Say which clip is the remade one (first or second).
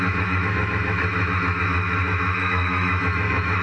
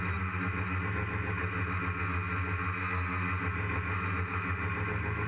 first